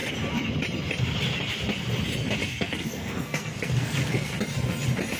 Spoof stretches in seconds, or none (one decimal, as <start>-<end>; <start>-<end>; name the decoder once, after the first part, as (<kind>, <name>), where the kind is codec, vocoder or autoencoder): 2.5-4.3 (codec, SNAC)